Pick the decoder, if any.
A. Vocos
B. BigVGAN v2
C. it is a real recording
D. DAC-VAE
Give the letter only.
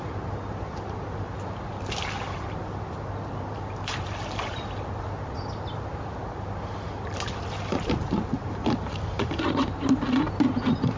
C